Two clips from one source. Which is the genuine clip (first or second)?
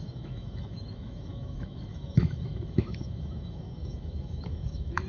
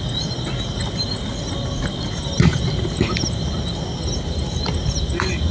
second